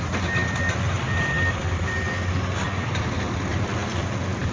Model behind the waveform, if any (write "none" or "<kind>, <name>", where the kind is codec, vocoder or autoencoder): none